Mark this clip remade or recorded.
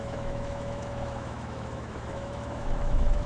remade